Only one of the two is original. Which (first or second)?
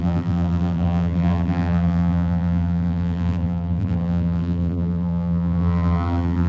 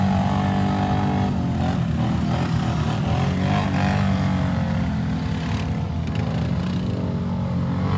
second